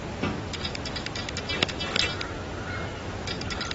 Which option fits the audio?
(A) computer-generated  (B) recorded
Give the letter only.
B